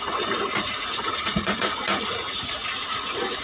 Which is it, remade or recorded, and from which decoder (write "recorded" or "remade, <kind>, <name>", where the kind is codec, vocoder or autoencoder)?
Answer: remade, vocoder, Vocos